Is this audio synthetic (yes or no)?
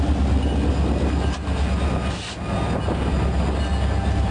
no